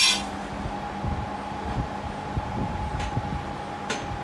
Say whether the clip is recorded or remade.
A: recorded